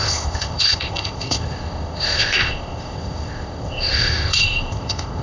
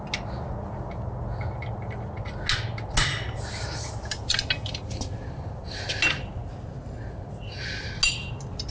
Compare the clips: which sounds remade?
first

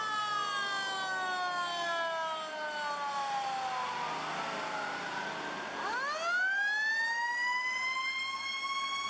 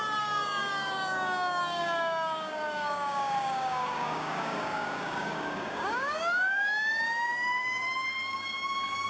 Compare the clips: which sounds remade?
second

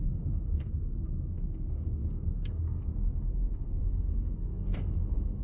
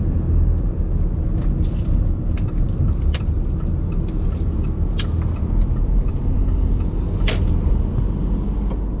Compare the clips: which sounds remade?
first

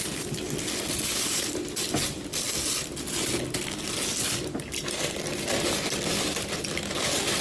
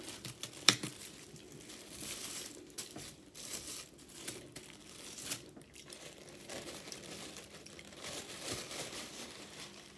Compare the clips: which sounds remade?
second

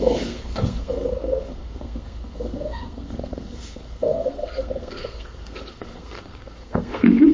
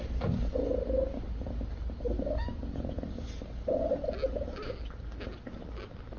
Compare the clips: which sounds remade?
first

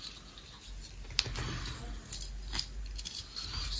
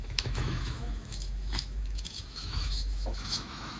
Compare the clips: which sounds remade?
second